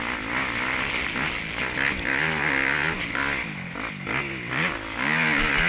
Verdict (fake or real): real